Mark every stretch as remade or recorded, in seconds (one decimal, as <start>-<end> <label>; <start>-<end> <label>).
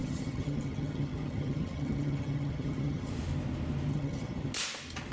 0.0-3.1 remade; 3.1-3.9 recorded; 3.9-4.5 remade; 4.5-5.1 recorded